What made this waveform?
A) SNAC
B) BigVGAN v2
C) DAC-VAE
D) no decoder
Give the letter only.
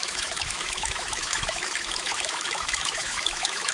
C